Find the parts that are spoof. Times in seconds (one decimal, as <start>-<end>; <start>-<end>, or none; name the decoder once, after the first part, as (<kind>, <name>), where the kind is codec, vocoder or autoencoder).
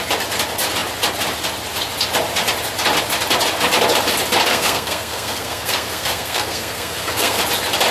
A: 4.5-7.4 (codec, SNAC)